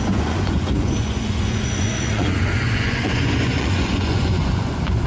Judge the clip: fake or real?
fake